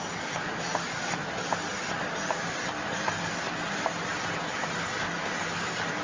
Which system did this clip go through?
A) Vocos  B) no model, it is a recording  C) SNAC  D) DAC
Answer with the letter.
B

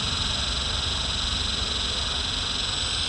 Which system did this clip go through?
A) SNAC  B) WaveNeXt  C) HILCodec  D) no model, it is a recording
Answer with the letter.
D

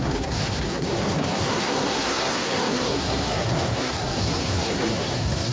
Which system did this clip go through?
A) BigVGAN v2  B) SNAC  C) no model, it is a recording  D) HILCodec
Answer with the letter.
B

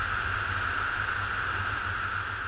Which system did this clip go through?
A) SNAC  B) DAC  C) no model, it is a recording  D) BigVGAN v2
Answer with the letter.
C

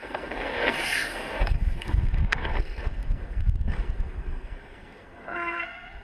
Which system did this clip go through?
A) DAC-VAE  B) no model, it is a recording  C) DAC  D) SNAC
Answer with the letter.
D